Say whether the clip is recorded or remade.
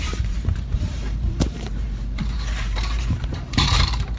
remade